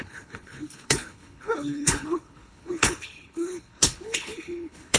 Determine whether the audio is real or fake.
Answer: fake